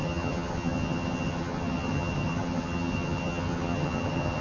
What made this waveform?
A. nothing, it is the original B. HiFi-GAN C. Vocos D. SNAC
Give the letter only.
B